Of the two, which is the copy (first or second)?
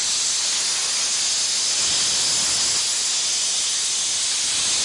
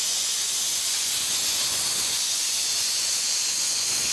second